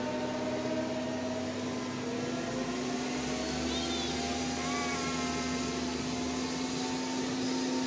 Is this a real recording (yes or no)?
yes